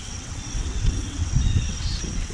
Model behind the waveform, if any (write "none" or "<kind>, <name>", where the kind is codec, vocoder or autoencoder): vocoder, WaveNeXt